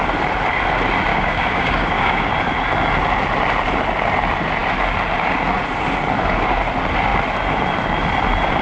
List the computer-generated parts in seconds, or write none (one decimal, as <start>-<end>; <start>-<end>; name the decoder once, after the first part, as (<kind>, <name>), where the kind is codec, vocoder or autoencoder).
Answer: 1.1-2.3 (codec, DAC)